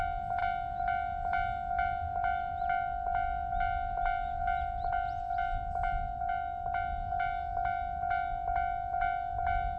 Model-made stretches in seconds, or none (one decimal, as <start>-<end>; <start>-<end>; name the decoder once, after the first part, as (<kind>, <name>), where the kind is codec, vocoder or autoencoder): none